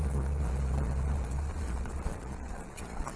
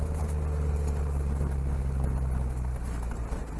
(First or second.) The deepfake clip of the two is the first